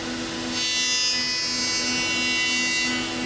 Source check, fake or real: real